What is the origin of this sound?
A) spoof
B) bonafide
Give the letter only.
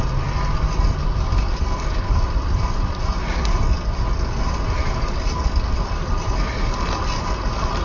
B